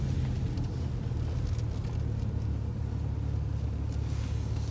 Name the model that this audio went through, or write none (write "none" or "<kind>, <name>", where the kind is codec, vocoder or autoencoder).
none